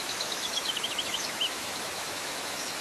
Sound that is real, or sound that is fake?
fake